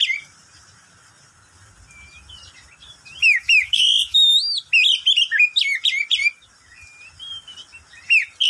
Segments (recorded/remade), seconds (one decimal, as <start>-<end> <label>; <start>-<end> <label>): 0.0-3.2 recorded; 3.2-4.3 remade; 4.3-8.5 recorded